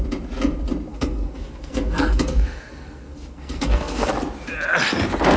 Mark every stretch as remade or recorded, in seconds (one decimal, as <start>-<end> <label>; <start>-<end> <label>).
0.0-0.9 recorded; 0.9-4.1 remade; 4.1-5.4 recorded